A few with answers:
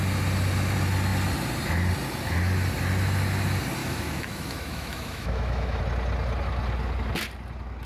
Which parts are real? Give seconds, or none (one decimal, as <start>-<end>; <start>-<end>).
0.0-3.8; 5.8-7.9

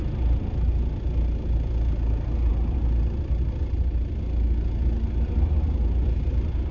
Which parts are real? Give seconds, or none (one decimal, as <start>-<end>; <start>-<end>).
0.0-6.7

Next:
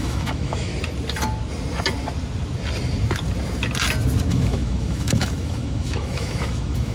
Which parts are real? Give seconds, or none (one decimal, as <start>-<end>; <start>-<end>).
0.7-4.3

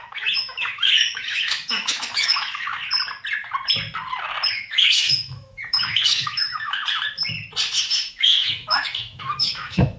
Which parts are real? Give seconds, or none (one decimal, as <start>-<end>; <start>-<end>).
2.8-4.5; 6.8-8.1

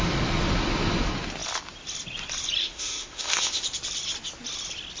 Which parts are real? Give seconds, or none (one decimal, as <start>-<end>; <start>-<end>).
0.0-2.6; 3.6-5.0

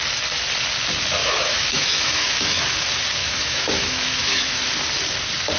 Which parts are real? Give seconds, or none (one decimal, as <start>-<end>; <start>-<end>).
0.0-1.2; 2.6-3.2; 4.6-5.6

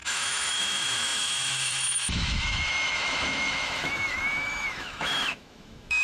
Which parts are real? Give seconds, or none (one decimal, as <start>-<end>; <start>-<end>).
none

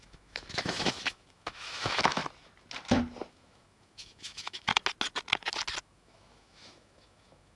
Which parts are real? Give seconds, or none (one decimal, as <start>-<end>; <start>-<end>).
2.2-3.3; 4.7-5.8